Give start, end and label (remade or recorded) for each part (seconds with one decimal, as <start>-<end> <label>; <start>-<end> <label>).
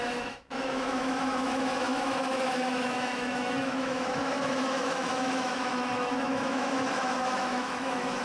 0.0-8.2 remade